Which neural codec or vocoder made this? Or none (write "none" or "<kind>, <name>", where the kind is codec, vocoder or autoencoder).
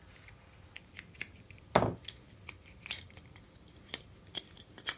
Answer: none